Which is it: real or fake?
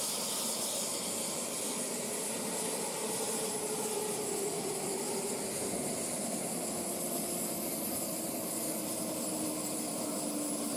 real